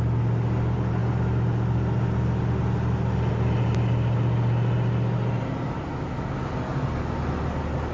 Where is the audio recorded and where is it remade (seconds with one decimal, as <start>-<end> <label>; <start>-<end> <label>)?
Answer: 0.0-7.9 recorded

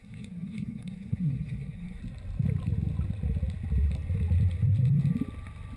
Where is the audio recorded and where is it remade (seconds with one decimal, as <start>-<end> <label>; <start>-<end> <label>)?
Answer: 0.0-2.0 remade; 2.0-5.8 recorded

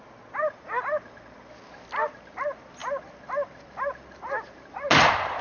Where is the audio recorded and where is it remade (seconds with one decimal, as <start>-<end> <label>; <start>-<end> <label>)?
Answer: 0.0-5.4 recorded

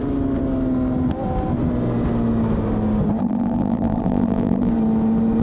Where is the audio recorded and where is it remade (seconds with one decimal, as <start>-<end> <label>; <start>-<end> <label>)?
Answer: 0.0-3.2 recorded; 3.2-4.7 remade; 4.7-5.4 recorded

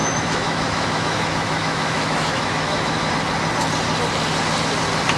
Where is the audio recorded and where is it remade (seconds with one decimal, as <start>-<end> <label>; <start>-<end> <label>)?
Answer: 0.0-3.1 remade; 3.1-5.2 recorded